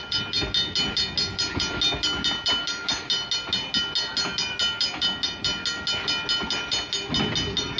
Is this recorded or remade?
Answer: recorded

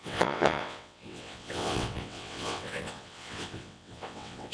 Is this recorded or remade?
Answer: remade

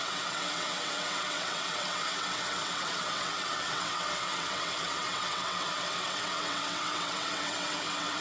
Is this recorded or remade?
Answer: remade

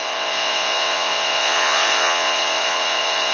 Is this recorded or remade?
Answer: remade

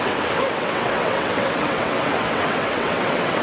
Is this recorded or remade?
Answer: remade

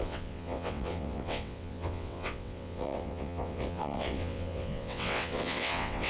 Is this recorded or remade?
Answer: remade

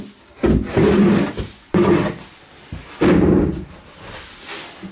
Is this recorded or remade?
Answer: recorded